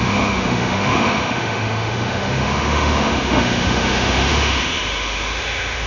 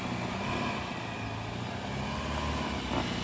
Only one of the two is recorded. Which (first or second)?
second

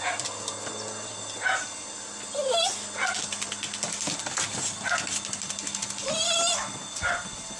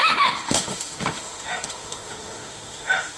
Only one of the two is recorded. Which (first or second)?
first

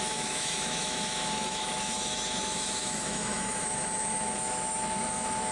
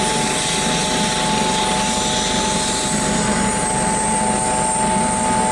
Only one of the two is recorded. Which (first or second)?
second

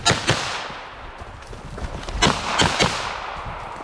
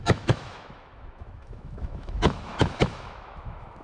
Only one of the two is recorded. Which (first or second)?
first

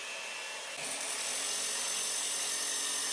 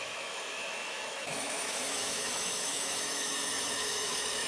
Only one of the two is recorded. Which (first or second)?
first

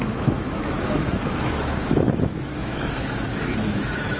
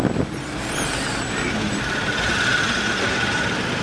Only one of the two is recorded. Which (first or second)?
second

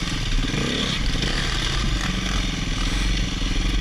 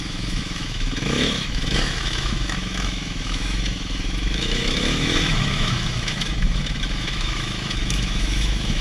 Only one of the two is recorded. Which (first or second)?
first